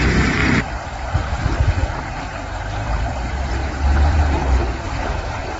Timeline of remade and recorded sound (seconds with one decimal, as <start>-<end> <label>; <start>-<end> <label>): 0.0-0.4 remade; 0.4-2.0 recorded; 2.0-3.6 remade; 3.6-4.1 recorded; 4.1-5.6 remade